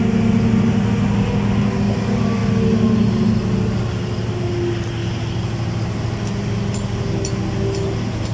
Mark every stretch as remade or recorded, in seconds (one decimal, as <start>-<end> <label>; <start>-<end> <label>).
0.0-8.3 recorded